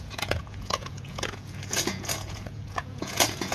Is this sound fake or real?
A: fake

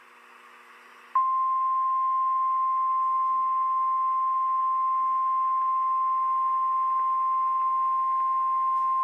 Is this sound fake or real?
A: real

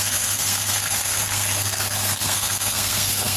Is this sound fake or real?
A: fake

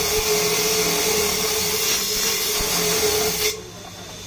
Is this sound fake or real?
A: real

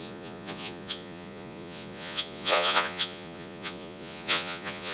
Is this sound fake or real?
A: fake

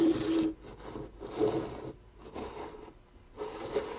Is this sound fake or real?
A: real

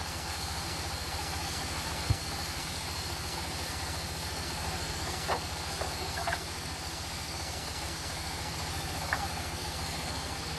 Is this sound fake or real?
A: fake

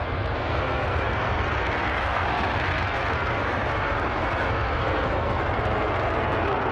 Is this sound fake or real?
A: fake